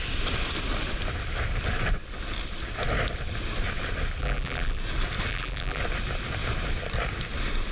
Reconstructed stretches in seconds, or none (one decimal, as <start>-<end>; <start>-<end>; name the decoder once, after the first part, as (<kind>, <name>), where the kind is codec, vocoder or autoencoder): 4.2-4.8 (vocoder, BigVGAN v2); 5.3-5.8